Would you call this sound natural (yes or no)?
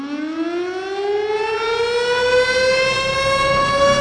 yes